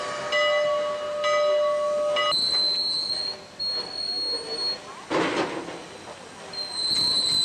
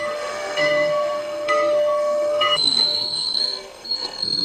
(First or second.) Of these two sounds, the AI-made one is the second